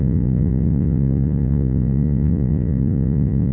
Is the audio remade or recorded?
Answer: remade